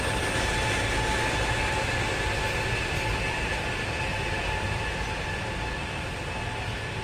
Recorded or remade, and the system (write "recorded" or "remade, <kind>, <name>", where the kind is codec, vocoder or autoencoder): recorded